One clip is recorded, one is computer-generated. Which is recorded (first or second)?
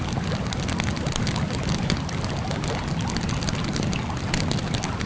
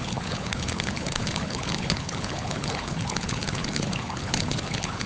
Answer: first